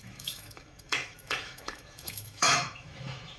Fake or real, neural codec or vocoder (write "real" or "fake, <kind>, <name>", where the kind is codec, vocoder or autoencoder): fake, autoencoder, DAC-VAE